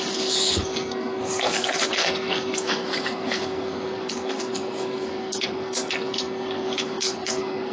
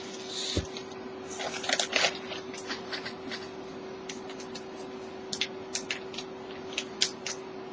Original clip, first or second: second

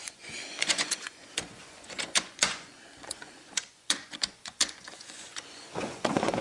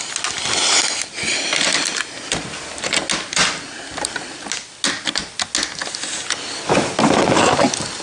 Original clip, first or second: second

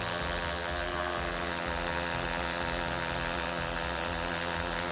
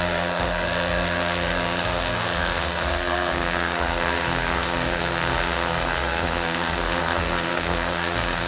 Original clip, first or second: first